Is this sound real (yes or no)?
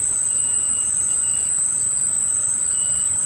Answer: no